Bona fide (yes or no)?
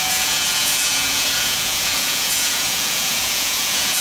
no